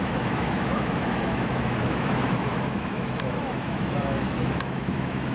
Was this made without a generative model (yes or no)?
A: no